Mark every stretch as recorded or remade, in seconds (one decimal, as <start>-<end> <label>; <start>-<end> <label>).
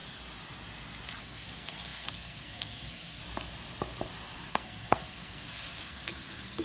0.0-1.2 recorded; 1.2-3.2 remade; 3.2-4.5 recorded; 4.5-6.6 remade